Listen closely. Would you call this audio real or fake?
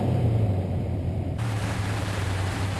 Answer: fake